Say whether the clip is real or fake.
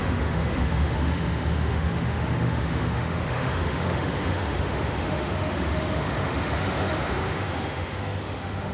fake